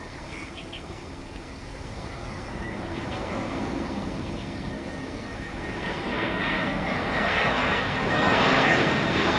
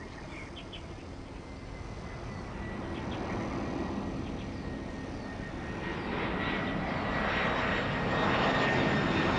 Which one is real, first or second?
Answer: second